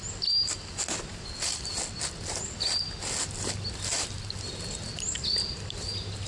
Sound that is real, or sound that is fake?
real